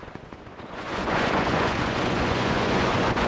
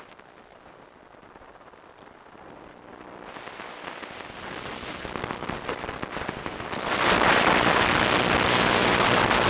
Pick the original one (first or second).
second